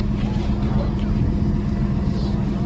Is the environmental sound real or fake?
real